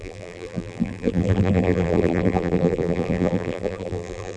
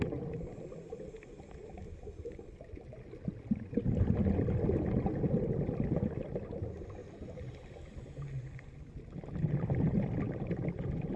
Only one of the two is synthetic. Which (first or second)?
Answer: first